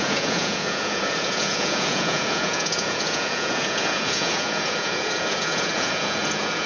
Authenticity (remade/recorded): remade